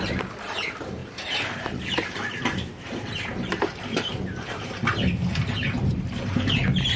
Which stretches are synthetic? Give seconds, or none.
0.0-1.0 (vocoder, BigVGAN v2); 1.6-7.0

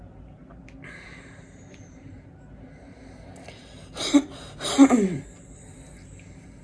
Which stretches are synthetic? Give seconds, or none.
0.0-0.4 (vocoder, BigVGAN v2); 1.2-3.3